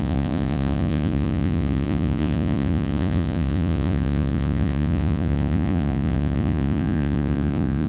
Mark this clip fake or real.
fake